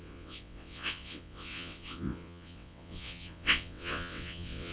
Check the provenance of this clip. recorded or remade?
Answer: remade